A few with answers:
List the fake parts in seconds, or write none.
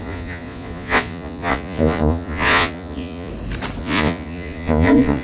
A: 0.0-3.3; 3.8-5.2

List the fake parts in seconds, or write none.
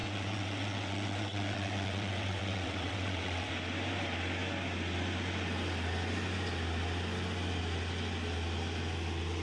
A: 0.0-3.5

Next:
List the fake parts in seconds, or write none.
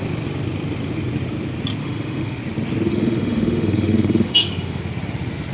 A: 1.8-2.4; 2.9-4.8